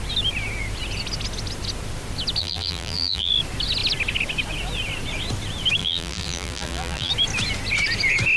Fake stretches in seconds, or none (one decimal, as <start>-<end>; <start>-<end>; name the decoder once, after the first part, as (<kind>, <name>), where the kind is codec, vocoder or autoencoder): 2.4-3.3 (vocoder, BigVGAN v2); 5.8-7.1